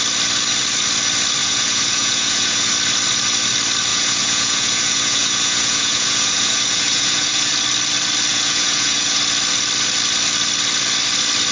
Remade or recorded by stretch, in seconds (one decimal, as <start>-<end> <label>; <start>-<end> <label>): 0.0-1.4 recorded; 1.4-2.7 remade; 2.7-3.9 recorded; 3.9-7.5 remade; 7.5-8.3 recorded; 8.3-9.2 remade; 9.2-11.5 recorded